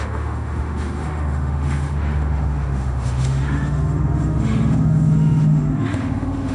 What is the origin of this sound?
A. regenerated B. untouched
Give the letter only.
A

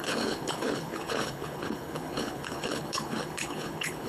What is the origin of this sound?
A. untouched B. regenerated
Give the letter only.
B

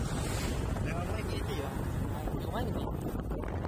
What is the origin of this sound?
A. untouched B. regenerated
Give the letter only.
A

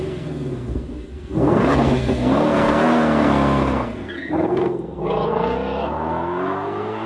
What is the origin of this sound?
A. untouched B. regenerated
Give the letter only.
B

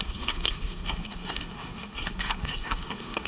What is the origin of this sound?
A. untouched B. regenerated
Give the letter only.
B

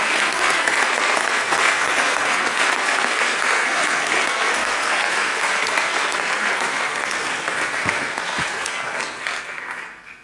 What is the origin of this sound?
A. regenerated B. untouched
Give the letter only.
A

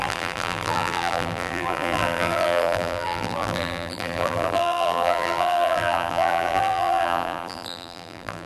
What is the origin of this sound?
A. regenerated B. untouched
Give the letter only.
A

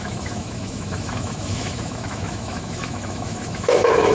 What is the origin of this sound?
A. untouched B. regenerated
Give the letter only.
B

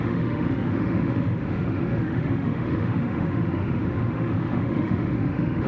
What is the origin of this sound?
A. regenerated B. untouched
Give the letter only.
A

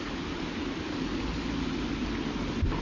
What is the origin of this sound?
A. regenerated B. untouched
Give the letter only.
B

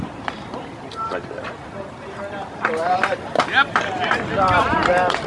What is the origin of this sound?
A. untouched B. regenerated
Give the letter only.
B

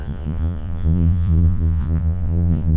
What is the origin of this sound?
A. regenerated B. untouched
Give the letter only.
A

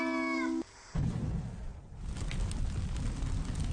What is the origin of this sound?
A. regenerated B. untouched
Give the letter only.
B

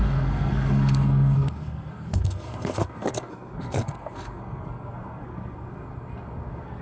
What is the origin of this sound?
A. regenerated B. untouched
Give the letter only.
A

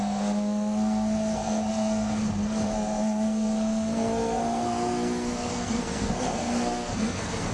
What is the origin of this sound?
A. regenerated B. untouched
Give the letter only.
A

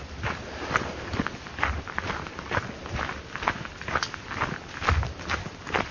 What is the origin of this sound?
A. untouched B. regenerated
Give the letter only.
A